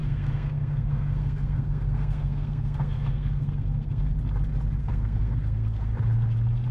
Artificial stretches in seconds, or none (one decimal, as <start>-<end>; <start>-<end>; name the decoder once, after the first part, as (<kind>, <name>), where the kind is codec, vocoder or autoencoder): 0.0-4.1 (codec, SNAC); 4.8-5.9